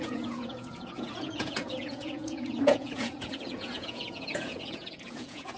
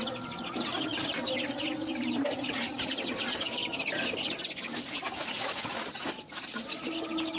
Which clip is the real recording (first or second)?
second